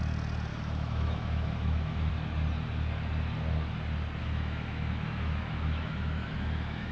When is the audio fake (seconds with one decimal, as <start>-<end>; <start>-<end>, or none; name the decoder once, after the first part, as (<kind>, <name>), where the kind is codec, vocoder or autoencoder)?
0.5-2.1 (autoencoder, DAC-VAE); 4.2-6.9